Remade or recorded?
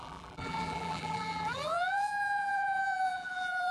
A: remade